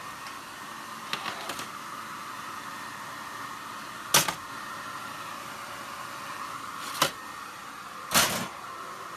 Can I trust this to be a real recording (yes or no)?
yes